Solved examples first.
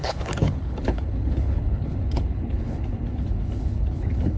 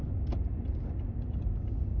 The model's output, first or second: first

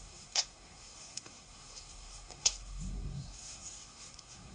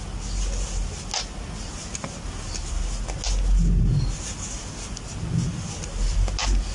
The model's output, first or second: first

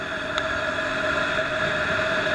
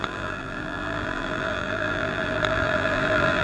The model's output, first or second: second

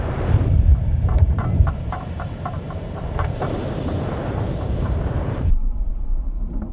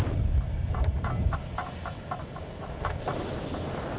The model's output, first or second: first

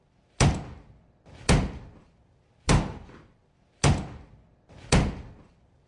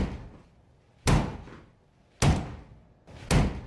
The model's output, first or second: first